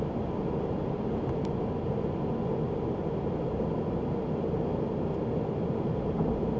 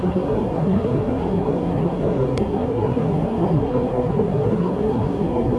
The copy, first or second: second